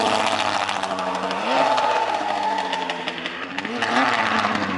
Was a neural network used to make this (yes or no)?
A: no